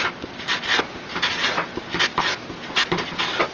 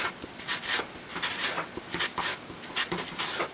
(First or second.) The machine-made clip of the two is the second